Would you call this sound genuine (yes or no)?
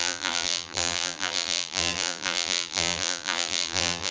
no